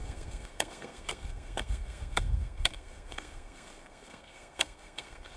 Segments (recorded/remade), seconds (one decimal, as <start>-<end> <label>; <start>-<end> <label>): 0.0-5.4 remade